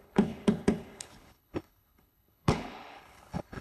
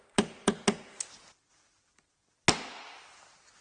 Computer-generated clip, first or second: first